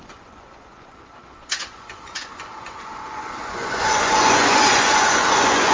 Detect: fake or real fake